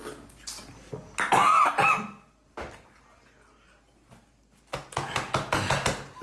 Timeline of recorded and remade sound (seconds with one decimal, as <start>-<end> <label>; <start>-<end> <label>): 0.0-6.2 recorded